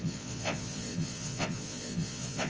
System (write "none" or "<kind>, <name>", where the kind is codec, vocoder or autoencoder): vocoder, Vocos